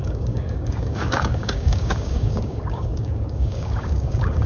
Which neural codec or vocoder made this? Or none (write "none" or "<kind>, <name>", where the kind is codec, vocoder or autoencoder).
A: codec, DAC